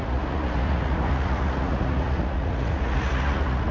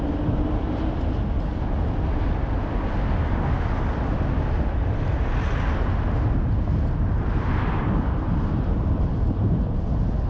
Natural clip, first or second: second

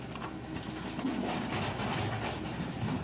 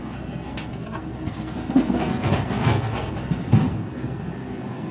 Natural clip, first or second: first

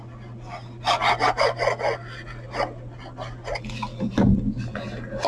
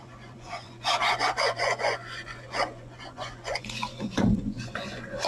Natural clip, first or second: first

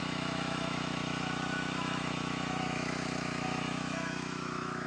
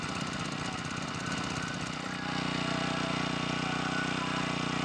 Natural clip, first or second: second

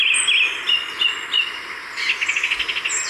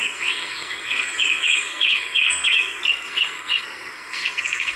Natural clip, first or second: first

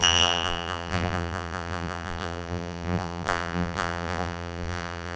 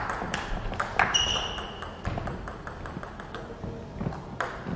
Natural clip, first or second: second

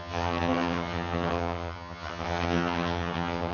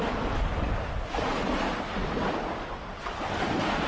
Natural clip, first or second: second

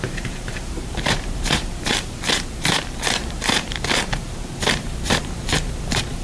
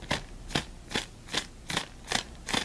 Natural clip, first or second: second